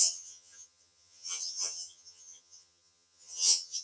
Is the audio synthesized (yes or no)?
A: yes